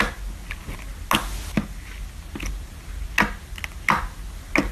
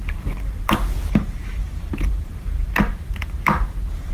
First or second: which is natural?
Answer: first